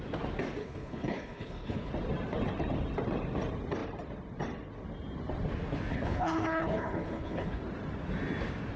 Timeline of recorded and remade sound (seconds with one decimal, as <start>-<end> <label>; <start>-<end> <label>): 0.0-0.6 recorded; 0.6-1.9 remade; 1.9-5.9 recorded; 5.9-7.6 remade; 7.6-8.8 recorded